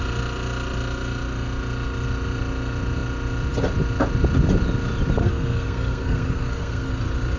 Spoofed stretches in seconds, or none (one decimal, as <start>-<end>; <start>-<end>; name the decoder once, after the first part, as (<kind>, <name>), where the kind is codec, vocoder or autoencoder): 5.2-6.9 (codec, SNAC)